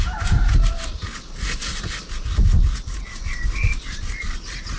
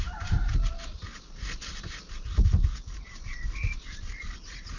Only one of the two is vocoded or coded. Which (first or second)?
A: second